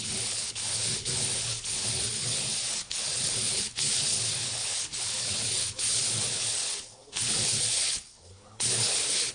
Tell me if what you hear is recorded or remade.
remade